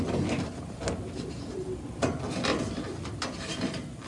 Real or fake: real